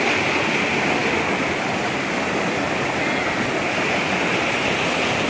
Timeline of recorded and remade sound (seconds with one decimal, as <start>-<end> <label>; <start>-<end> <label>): 0.0-5.3 recorded